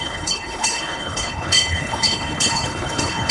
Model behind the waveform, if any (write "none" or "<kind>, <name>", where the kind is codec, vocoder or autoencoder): codec, HILCodec